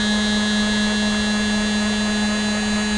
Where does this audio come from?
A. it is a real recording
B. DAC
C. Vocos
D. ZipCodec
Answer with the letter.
A